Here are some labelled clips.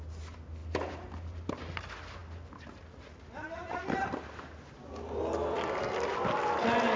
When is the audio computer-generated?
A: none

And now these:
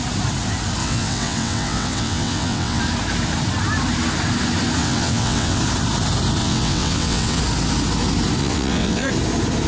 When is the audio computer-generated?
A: 0.8-2.8 (vocoder, WaveNeXt); 4.8-5.6; 6.4-7.4; 8.4-9.1